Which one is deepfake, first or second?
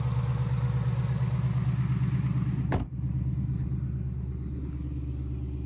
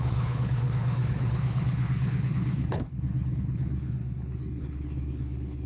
second